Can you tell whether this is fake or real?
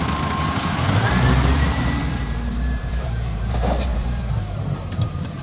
fake